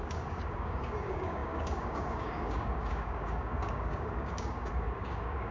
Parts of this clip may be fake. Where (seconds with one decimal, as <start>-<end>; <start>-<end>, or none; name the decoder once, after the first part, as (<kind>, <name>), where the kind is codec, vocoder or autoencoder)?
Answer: 0.0-5.5 (codec, DAC)

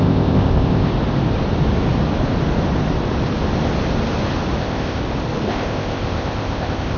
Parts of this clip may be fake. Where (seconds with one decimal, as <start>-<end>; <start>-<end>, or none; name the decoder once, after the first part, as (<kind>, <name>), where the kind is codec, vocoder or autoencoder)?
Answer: 0.0-0.9 (codec, ZipCodec); 4.6-5.0; 5.5-7.0